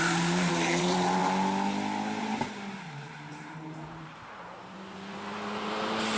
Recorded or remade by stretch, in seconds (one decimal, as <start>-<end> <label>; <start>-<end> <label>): 0.0-1.2 remade; 1.2-2.2 recorded; 2.2-6.2 remade